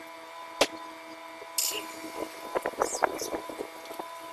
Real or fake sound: real